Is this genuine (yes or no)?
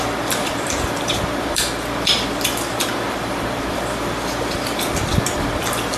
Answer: no